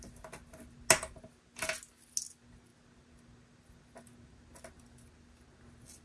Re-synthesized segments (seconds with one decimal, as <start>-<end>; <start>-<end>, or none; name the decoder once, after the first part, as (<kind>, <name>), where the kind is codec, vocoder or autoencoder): none